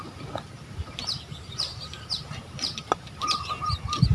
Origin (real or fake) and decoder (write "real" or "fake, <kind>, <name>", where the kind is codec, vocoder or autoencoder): fake, vocoder, BigVGAN v2